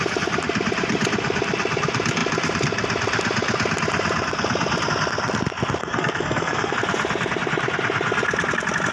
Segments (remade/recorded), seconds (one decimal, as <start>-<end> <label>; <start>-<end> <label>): 0.0-5.8 recorded; 5.8-6.7 remade; 6.7-8.9 recorded